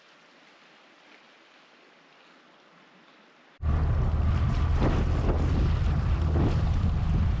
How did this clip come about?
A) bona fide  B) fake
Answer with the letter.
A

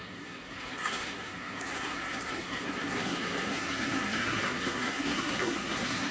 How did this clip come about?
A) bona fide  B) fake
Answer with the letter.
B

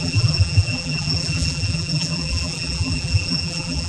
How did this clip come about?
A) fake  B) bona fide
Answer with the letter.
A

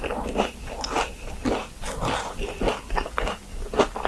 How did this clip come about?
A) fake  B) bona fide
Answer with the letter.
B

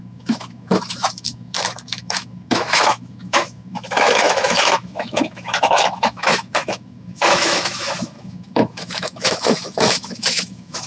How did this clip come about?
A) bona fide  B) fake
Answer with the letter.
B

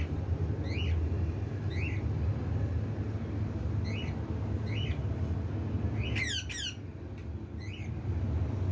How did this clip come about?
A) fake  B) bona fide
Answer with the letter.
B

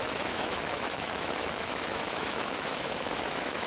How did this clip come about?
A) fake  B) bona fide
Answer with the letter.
A